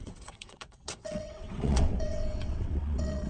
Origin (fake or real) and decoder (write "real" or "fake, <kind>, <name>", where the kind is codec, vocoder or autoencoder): fake, vocoder, WaveNeXt